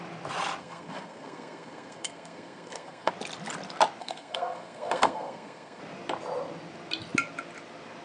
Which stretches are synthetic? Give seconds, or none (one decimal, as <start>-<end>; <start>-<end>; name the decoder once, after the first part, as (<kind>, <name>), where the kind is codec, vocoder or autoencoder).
0.6-3.1 (codec, SNAC); 4.0-5.8